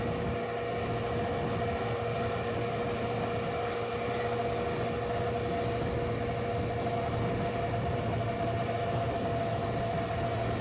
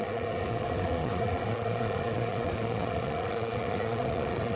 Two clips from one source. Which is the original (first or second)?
first